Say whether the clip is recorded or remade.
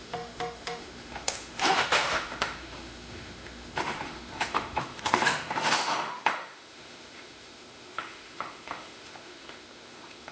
remade